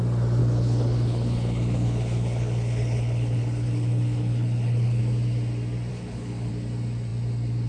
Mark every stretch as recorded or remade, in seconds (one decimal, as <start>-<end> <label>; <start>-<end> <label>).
0.0-0.4 recorded; 0.4-5.0 remade; 5.0-5.9 recorded; 5.9-6.5 remade; 6.5-7.7 recorded